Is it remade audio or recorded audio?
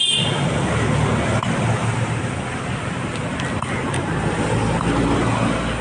recorded